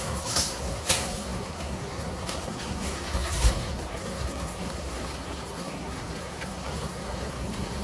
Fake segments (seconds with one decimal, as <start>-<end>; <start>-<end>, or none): 0.0-7.8

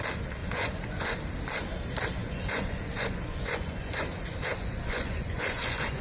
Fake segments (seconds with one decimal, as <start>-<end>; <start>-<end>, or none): 0.4-1.2; 2.2-6.0

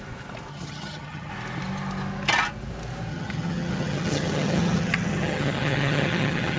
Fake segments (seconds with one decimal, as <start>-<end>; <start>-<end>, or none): 0.5-1.3; 3.1-6.6

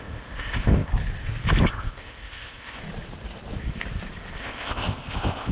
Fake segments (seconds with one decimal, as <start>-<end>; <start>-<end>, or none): 0.0-0.9; 1.7-2.8; 4.4-5.5

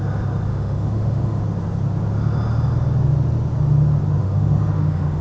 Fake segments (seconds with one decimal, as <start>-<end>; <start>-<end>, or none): 0.5-1.4; 4.2-5.2

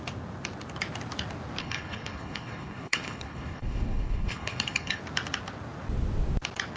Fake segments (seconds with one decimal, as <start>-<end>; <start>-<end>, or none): 1.6-5.0

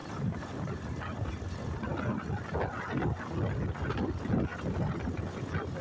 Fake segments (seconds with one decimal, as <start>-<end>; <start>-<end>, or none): 0.0-0.8